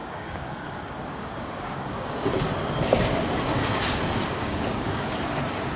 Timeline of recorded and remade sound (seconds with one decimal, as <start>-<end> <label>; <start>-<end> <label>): 0.0-2.3 remade; 2.3-2.9 recorded; 2.9-3.8 remade; 3.8-4.4 recorded; 4.4-5.2 remade; 5.2-5.8 recorded

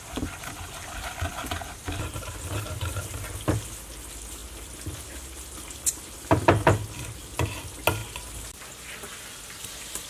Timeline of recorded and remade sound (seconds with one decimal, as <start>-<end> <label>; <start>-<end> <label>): 0.0-10.1 recorded

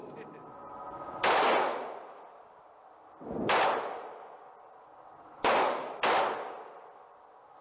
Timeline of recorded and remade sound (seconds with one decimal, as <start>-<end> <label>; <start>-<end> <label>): 0.0-7.6 recorded

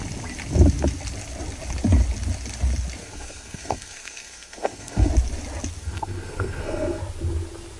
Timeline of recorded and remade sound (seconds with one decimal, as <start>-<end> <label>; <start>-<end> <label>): 0.0-3.0 recorded; 3.0-5.1 remade; 5.1-5.8 recorded; 5.8-7.0 remade; 7.0-7.8 recorded

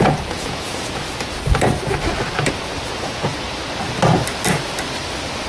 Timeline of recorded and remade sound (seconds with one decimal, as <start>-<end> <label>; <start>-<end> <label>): 0.0-1.0 remade; 1.0-2.8 recorded; 2.8-3.3 remade; 3.3-5.5 recorded